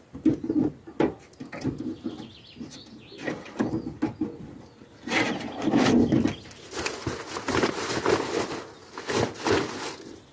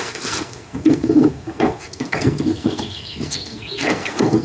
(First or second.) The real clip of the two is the first